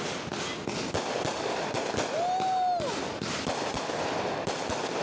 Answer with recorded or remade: recorded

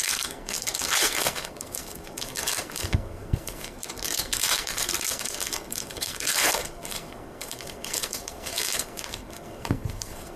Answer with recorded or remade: remade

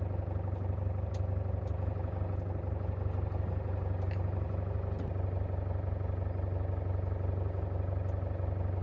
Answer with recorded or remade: recorded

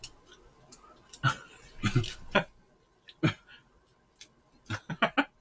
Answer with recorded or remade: recorded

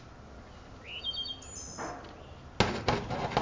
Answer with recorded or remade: recorded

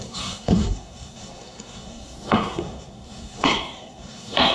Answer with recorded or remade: remade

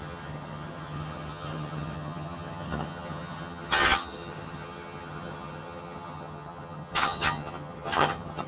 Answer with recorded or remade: remade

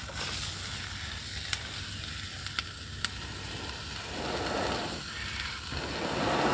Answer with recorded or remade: recorded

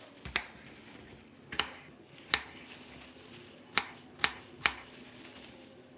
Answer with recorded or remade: recorded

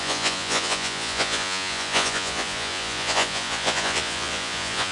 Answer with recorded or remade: remade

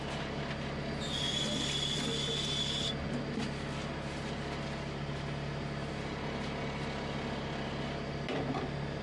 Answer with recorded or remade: recorded